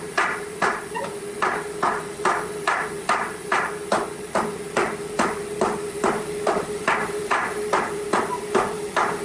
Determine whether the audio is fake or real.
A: real